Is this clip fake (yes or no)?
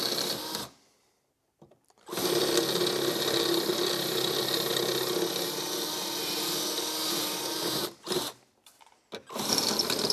no